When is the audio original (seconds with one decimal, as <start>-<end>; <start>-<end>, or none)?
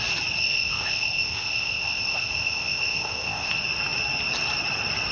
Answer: 0.0-0.4; 3.5-5.1